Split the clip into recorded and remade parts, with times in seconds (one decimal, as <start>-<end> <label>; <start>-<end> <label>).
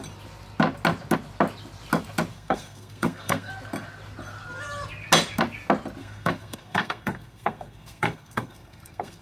0.0-2.3 recorded; 2.3-3.5 remade; 3.5-6.0 recorded; 6.0-9.2 remade